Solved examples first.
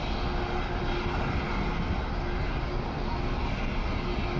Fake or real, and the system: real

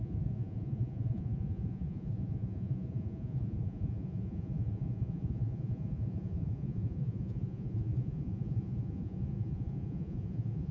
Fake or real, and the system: fake, vocoder, Vocos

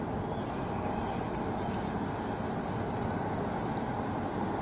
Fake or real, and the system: real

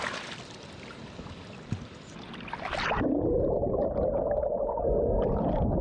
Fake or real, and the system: real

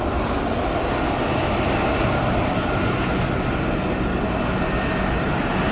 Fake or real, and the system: real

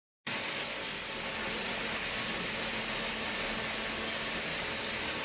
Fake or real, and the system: real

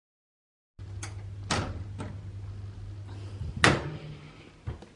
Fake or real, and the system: real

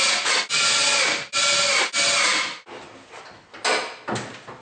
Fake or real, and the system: real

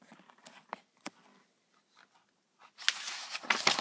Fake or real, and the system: real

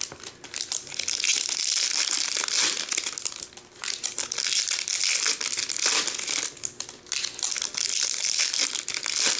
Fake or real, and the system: real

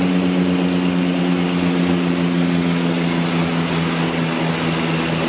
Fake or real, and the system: real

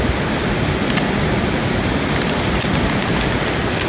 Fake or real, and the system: real